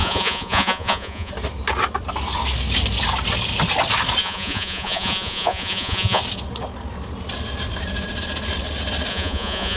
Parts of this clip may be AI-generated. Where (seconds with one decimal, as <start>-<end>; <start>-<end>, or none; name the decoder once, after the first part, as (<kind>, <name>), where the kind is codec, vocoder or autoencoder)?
0.0-1.3 (vocoder, Vocos); 4.2-6.2; 9.1-9.8

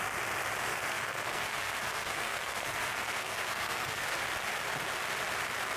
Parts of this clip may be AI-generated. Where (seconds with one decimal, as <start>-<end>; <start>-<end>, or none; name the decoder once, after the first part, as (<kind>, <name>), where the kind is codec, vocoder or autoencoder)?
0.7-4.2 (codec, SNAC)